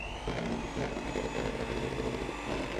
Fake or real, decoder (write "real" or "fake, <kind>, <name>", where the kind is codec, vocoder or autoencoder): real